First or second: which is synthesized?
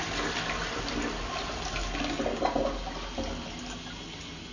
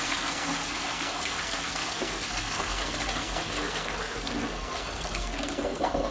second